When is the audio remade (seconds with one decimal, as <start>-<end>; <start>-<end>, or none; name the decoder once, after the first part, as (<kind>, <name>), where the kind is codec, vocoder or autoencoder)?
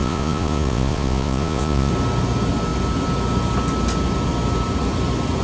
0.0-1.9 (vocoder, Vocos)